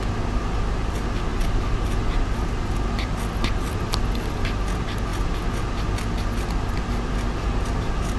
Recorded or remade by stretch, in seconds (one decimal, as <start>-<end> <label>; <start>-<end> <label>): 0.0-8.2 recorded